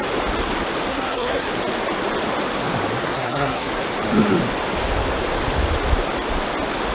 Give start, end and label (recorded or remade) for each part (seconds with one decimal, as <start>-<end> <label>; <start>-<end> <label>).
0.0-0.9 recorded; 0.9-1.5 remade; 1.5-3.0 recorded; 3.0-3.7 remade; 3.7-6.9 recorded